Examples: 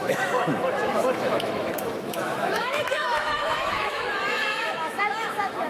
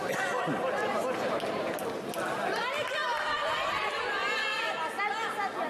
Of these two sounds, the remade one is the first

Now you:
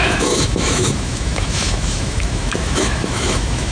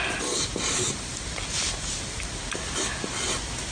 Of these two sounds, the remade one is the first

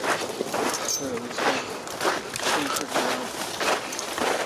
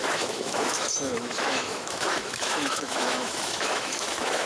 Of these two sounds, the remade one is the second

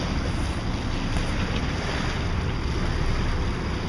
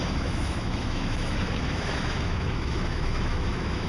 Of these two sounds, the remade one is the second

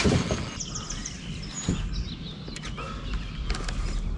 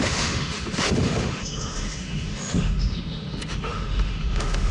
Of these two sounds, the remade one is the second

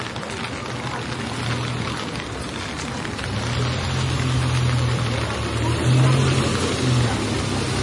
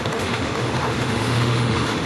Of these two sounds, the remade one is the second